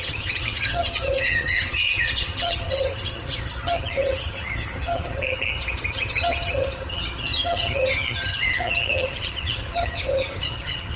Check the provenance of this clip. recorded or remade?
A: remade